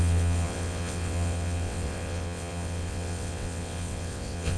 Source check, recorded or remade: remade